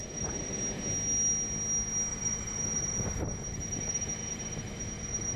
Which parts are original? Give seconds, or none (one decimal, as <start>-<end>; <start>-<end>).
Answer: 0.6-2.1